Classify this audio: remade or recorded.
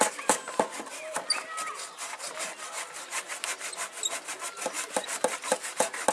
recorded